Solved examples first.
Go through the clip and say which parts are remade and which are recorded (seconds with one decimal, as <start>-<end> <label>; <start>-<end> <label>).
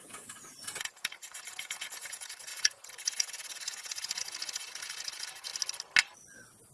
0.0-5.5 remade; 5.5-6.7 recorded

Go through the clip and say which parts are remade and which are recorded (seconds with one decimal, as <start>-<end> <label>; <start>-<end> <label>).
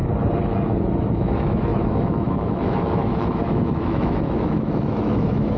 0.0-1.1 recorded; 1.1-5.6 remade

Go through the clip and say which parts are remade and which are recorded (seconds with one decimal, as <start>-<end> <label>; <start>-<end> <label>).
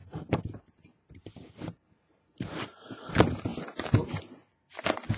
0.0-3.1 remade; 3.1-5.2 recorded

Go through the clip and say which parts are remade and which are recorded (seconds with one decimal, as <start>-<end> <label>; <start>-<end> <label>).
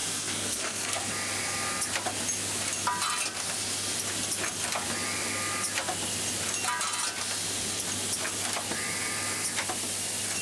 0.0-1.1 remade; 1.1-10.4 recorded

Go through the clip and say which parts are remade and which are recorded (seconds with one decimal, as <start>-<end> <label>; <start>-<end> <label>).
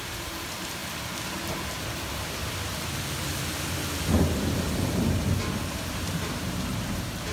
0.0-0.8 remade; 0.8-1.8 recorded; 1.8-2.4 remade; 2.4-4.6 recorded; 4.6-7.3 remade